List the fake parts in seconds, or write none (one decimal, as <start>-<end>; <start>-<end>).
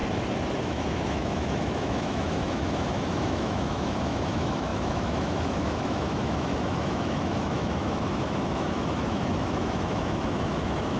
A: 0.6-11.0